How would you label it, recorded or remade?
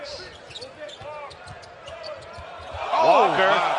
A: recorded